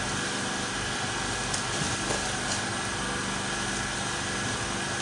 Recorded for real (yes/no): yes